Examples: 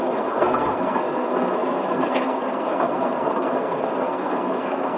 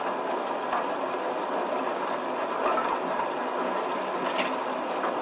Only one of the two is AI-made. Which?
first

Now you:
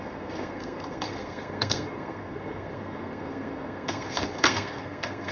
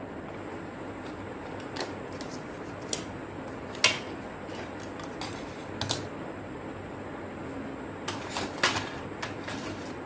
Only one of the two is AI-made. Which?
first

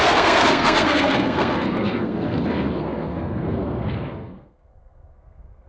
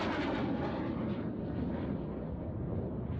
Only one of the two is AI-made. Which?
first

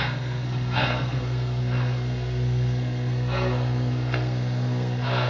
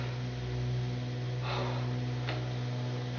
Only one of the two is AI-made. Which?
first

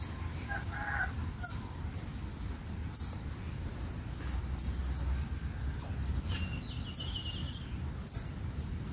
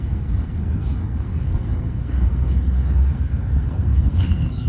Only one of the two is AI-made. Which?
second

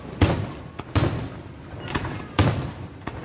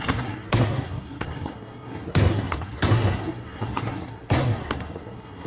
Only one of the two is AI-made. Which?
second